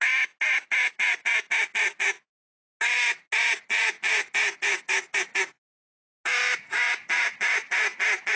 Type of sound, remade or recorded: recorded